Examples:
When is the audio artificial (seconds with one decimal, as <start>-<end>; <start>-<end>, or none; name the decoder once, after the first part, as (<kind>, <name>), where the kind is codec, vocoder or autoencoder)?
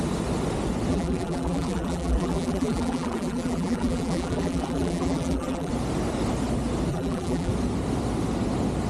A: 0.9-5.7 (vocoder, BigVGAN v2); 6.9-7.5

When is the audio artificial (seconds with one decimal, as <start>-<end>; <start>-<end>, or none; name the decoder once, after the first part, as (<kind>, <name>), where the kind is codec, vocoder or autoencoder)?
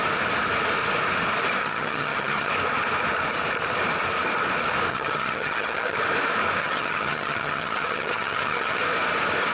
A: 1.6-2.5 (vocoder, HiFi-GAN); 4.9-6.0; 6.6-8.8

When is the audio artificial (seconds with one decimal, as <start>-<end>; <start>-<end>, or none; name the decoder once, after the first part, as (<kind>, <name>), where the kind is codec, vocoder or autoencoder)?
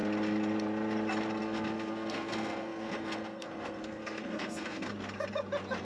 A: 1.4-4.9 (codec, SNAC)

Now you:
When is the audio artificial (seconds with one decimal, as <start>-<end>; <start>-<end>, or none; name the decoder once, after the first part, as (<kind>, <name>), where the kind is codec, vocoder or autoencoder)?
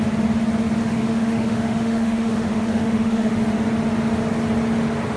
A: 0.8-3.4 (autoencoder, DAC-VAE)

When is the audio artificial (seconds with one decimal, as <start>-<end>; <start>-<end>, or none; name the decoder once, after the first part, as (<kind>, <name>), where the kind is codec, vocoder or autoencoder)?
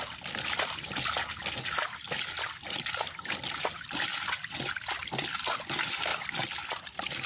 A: 6.1-6.7 (vocoder, BigVGAN v2)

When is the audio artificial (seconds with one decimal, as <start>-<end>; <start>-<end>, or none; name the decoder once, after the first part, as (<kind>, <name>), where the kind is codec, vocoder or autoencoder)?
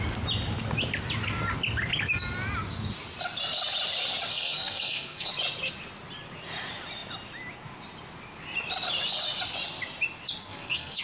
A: 4.3-5.3 (codec, SNAC); 10.5-11.0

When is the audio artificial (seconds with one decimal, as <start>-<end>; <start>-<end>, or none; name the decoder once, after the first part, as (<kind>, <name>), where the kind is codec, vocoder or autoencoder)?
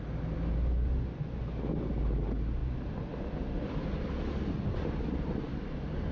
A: none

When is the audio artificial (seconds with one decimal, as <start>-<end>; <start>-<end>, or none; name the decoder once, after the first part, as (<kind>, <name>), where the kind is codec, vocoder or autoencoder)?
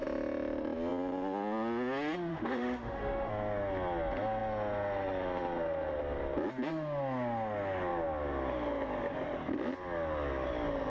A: 2.3-3.3 (autoencoder, DAC-VAE)